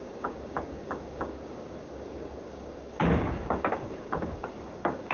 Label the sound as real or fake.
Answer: fake